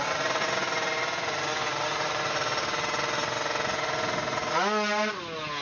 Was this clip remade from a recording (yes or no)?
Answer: no